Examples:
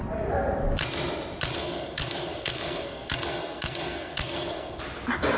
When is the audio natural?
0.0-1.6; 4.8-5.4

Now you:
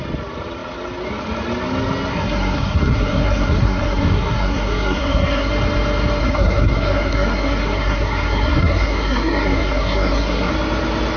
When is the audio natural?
0.0-2.1; 5.5-6.2; 10.5-11.2

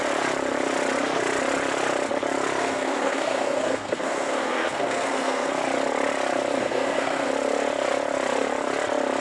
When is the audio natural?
0.0-2.6; 5.5-6.6; 7.3-9.2

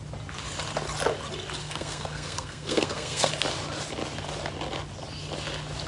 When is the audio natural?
0.0-1.6; 3.3-5.9